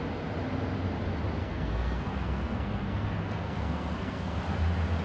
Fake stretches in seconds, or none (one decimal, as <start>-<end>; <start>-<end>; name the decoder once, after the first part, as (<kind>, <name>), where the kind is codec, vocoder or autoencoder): 1.4-4.4 (codec, SNAC)